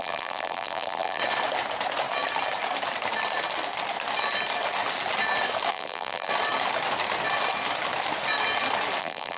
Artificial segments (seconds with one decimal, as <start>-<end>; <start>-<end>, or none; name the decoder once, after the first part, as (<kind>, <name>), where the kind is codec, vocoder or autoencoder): 0.0-1.2 (vocoder, BigVGAN v2); 5.7-6.3; 9.0-9.4